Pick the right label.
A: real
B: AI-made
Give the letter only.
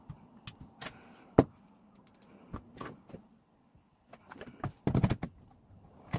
A